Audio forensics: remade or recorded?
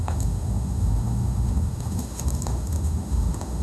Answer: remade